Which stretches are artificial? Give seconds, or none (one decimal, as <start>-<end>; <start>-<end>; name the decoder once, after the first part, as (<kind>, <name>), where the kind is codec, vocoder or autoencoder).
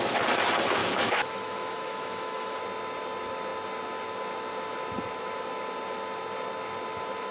0.8-2.6 (autoencoder, DAC-VAE)